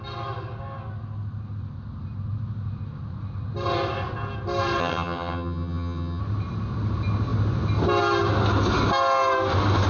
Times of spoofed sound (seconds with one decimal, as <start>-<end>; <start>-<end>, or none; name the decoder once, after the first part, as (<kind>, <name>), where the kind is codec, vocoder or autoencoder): 4.8-6.2 (vocoder, HiFi-GAN)